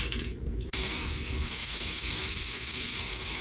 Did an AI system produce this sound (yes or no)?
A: yes